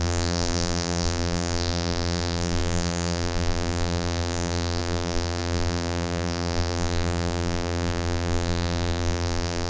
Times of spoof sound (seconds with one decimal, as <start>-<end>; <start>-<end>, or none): 0.0-9.7